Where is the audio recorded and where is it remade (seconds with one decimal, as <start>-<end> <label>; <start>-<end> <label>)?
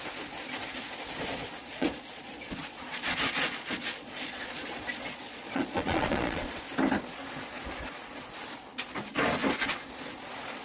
0.0-1.6 recorded; 1.6-6.6 remade; 6.6-10.6 recorded